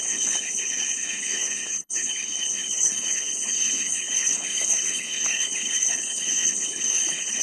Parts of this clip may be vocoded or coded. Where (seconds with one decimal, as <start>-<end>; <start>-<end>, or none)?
0.0-7.4